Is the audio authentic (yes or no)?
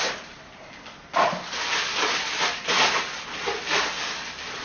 yes